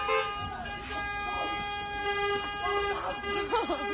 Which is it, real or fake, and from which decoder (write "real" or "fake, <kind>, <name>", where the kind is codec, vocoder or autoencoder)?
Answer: real